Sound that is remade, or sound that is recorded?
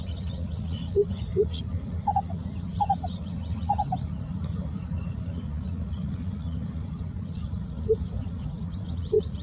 remade